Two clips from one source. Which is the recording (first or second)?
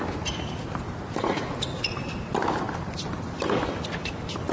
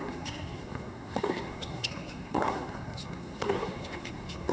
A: first